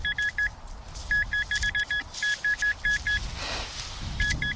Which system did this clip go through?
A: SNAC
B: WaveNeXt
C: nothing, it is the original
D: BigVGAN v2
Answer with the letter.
C